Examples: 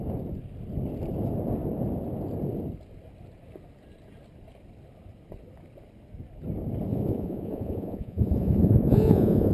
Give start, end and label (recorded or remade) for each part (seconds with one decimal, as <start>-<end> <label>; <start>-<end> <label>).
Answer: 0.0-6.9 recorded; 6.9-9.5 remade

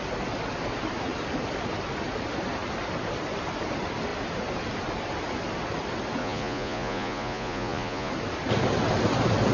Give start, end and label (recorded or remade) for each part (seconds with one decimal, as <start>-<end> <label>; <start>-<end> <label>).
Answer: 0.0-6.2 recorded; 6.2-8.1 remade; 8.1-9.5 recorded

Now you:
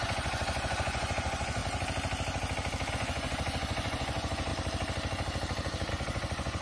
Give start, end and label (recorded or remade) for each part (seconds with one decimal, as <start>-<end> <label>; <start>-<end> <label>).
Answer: 0.0-1.6 remade; 1.6-2.9 recorded; 2.9-4.5 remade; 4.5-5.9 recorded; 5.9-6.6 remade

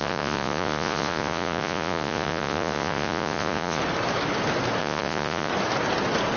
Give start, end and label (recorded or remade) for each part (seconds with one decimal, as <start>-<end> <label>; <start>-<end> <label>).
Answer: 0.0-3.8 remade; 3.8-4.8 recorded; 4.8-5.5 remade; 5.5-6.4 recorded

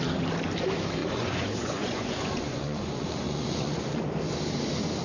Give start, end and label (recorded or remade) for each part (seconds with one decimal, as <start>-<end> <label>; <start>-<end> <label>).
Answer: 0.0-1.0 recorded; 1.0-4.0 remade; 4.0-5.0 recorded

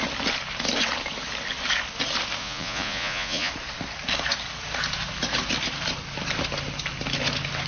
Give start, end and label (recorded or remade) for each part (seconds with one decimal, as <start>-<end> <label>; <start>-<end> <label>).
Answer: 0.0-2.4 recorded; 2.4-3.5 remade; 3.5-7.7 recorded

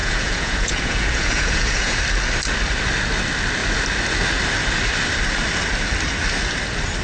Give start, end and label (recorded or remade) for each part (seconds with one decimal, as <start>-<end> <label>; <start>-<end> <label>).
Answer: 0.0-2.0 remade; 2.0-7.0 recorded